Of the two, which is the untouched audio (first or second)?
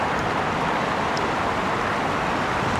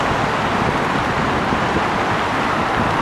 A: second